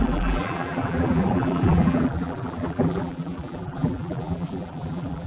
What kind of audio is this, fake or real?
fake